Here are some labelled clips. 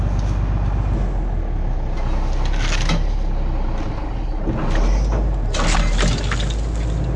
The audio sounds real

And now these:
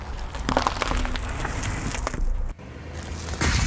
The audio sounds real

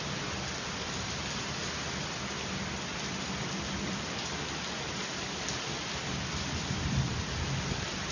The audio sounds real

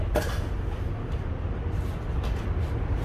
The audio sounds real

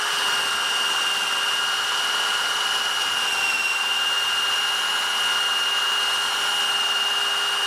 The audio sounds real